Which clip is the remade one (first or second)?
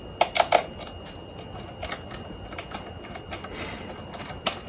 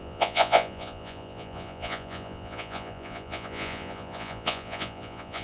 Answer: second